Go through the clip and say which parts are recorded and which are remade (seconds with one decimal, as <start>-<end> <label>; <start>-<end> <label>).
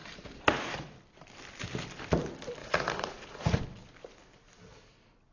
0.0-2.6 recorded; 2.6-3.6 remade; 3.6-5.3 recorded